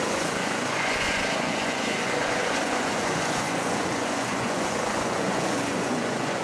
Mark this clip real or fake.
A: fake